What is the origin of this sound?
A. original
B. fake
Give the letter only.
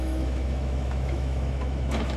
B